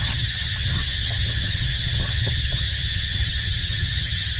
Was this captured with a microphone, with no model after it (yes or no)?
no